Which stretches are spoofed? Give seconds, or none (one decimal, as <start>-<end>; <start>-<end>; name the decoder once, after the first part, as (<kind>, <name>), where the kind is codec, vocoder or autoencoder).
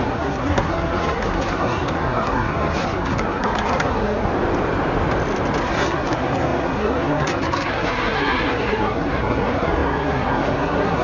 0.0-4.3 (codec, SNAC); 5.6-11.0